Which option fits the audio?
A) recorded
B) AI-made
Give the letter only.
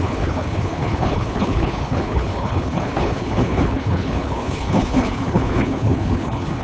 B